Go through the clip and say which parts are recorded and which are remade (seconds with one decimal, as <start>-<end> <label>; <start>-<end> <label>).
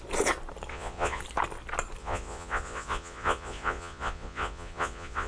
0.0-0.7 recorded; 0.7-1.2 remade; 1.2-2.0 recorded; 2.0-5.3 remade